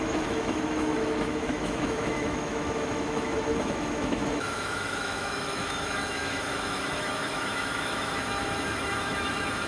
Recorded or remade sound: remade